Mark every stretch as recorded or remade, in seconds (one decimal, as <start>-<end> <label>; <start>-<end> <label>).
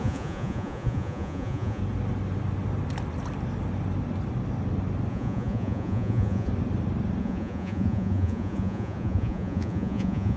0.0-1.8 remade; 1.8-5.1 recorded; 5.1-6.5 remade; 6.5-7.2 recorded; 7.2-10.4 remade